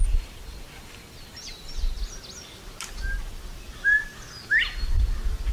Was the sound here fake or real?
real